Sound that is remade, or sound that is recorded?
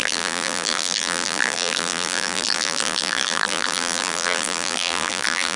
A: remade